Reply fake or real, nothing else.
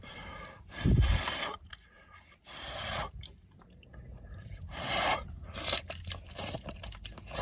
fake